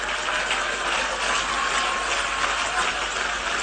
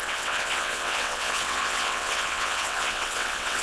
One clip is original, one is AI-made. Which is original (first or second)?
first